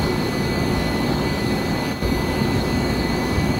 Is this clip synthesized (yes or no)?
yes